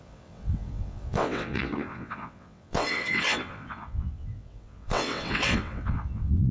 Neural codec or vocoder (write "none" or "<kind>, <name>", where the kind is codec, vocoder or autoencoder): vocoder, WaveNeXt